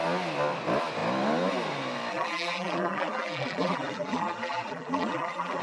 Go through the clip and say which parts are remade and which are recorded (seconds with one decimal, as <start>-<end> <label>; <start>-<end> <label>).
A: 0.0-2.1 recorded; 2.1-5.6 remade